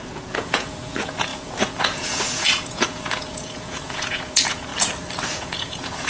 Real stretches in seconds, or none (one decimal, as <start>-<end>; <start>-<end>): 4.7-5.3